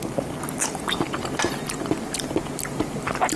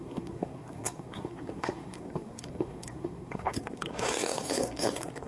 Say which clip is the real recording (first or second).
first